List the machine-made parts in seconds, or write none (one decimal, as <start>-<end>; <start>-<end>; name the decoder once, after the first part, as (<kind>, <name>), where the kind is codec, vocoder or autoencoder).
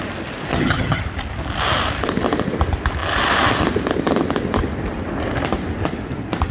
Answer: 0.5-1.0 (vocoder, HiFi-GAN)